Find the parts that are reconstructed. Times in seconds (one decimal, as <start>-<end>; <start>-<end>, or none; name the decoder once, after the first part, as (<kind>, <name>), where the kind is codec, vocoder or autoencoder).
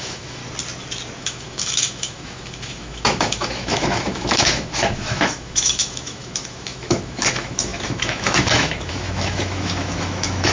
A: 0.0-0.4 (autoencoder, DAC-VAE); 1.2-10.5